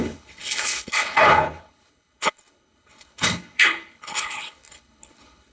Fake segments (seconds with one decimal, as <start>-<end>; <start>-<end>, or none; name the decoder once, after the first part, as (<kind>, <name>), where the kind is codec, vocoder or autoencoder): 0.0-5.5 (codec, HILCodec)